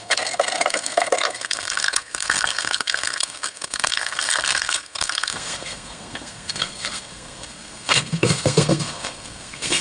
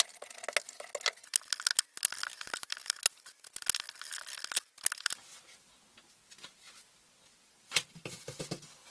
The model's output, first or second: first